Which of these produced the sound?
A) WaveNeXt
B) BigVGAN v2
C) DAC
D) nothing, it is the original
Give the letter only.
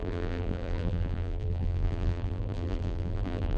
B